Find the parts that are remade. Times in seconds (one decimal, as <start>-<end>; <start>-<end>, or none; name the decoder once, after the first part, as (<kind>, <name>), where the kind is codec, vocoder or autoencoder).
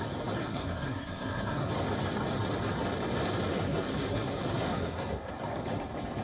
0.4-1.7 (codec, SNAC); 3.5-5.3